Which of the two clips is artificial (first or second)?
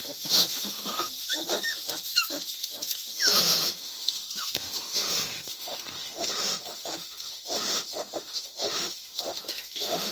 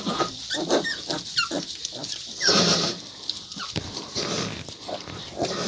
first